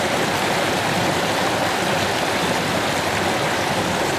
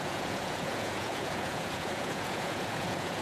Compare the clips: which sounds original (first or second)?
first